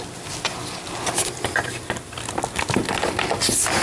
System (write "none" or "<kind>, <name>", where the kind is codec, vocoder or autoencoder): none